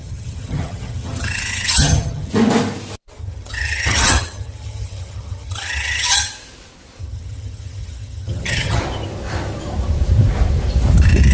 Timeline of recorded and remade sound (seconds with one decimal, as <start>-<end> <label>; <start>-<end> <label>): 0.0-2.3 remade; 2.3-3.2 recorded; 3.2-6.3 remade; 6.3-7.0 recorded; 7.0-8.8 remade; 8.8-11.3 recorded